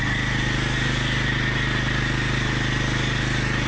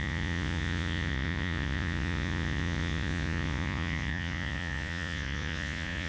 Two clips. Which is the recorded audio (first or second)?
first